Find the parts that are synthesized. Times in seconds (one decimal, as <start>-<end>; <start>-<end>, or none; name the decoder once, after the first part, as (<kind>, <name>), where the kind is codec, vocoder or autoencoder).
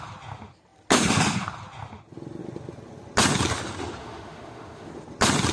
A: 4.0-4.9 (autoencoder, DAC-VAE)